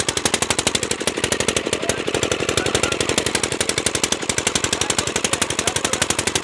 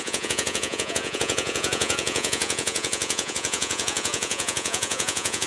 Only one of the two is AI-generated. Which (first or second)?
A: second